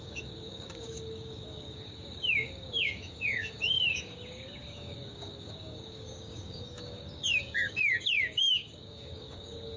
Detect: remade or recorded remade